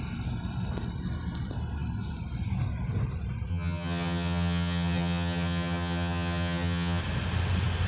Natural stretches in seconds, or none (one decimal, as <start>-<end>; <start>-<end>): 0.0-3.5; 7.0-7.9